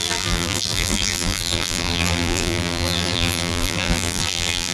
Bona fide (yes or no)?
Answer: no